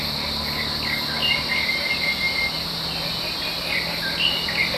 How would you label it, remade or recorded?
recorded